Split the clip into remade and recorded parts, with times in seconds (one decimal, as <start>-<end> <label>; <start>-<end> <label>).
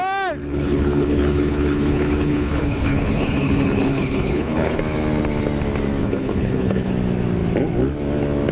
0.0-0.4 recorded; 0.4-4.8 remade; 4.8-6.0 recorded; 6.0-6.9 remade; 6.9-8.5 recorded